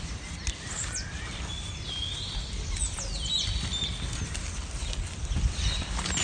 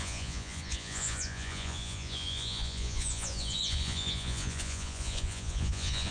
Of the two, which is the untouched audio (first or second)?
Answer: first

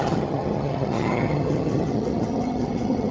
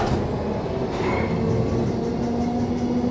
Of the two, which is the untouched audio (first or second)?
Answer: second